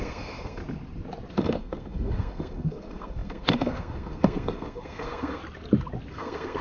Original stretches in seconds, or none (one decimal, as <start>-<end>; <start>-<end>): 0.6-1.3; 5.4-6.1